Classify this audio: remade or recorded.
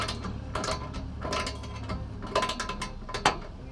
recorded